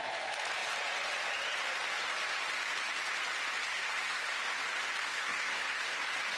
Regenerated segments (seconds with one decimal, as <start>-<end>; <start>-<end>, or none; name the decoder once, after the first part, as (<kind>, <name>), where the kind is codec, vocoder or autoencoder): 3.7-4.4 (codec, SNAC); 5.1-6.0